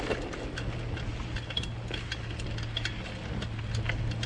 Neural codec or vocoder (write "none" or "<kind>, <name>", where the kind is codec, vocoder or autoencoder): none